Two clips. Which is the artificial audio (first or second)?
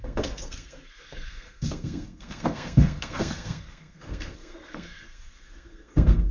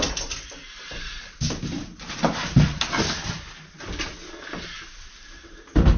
first